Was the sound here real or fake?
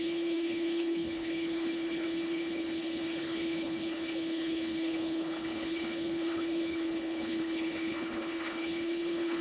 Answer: fake